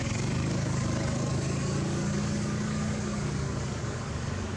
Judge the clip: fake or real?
fake